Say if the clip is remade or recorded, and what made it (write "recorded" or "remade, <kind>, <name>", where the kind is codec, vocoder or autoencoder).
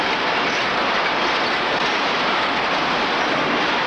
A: recorded